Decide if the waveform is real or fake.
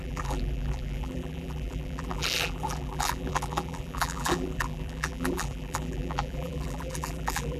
fake